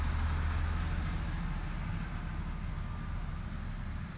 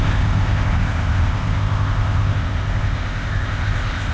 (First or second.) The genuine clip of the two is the first